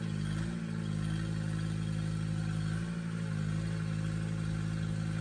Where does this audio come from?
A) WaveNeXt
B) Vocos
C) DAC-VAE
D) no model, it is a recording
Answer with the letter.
D